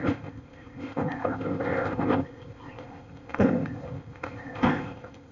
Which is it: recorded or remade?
remade